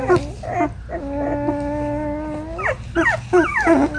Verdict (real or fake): real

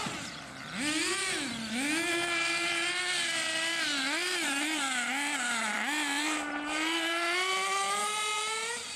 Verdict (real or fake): fake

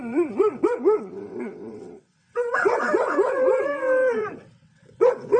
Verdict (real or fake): fake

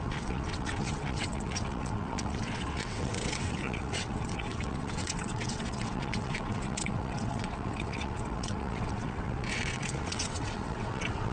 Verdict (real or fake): fake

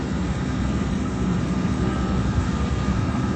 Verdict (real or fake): fake